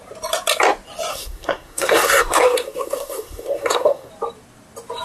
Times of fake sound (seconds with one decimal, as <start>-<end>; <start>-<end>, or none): 1.1-4.1